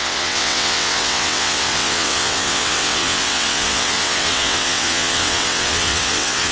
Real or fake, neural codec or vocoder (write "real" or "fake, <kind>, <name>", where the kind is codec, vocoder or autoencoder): fake, vocoder, WaveNeXt